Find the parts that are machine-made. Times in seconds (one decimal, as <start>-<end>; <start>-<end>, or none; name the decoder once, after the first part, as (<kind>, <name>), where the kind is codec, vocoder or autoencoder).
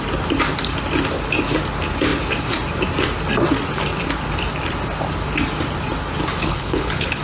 6.4-7.2 (codec, HILCodec)